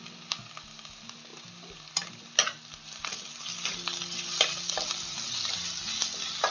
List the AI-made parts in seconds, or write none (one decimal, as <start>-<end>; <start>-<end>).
none